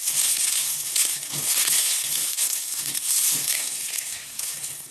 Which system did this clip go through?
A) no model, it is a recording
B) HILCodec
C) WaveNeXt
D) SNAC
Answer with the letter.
D